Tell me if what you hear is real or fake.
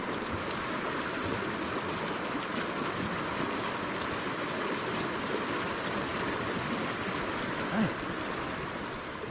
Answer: real